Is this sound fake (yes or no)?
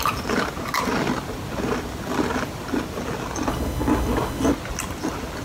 no